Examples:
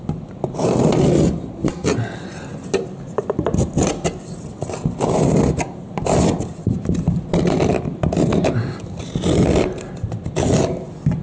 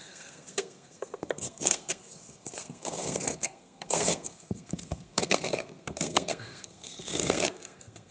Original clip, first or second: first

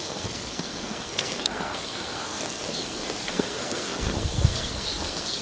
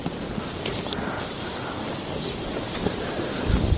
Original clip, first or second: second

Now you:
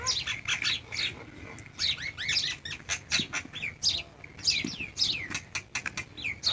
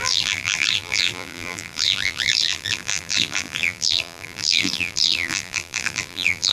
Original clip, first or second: first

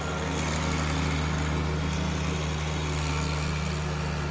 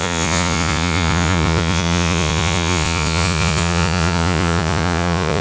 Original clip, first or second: first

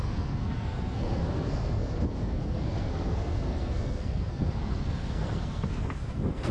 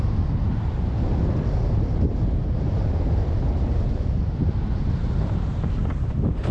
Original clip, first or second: second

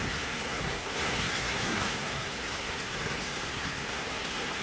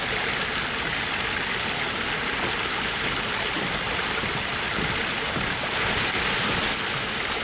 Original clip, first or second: second